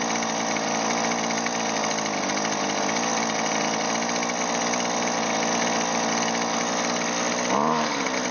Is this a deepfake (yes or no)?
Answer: no